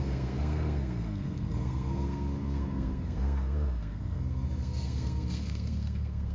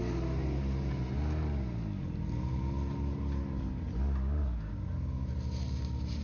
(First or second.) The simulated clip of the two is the first